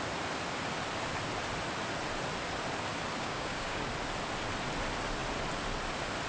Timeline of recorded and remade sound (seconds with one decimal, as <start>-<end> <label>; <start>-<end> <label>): 0.0-3.2 recorded; 3.2-3.9 remade; 3.9-6.3 recorded